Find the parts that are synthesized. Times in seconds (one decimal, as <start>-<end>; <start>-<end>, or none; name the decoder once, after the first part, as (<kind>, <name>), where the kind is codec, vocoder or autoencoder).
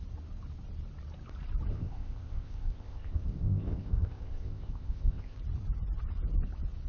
1.7-5.4 (codec, ZipCodec)